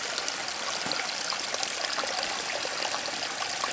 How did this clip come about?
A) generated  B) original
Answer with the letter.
B